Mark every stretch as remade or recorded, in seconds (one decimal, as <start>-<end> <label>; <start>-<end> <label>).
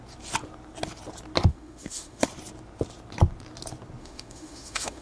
0.0-1.5 recorded; 1.5-2.2 remade; 2.2-4.0 recorded; 4.0-5.0 remade